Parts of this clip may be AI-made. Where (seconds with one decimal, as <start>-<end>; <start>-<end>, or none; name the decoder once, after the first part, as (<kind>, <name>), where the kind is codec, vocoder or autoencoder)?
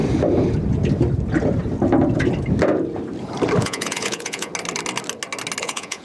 3.6-4.5 (vocoder, Vocos); 5.6-6.0